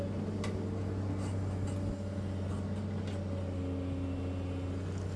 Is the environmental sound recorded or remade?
recorded